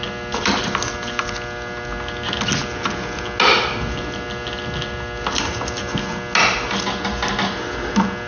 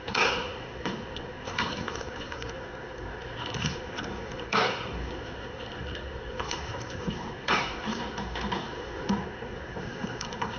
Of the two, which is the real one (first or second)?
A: first